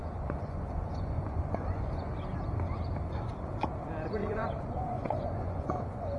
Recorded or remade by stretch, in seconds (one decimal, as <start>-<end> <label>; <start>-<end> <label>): 0.0-2.1 remade; 2.1-4.2 recorded; 4.2-6.2 remade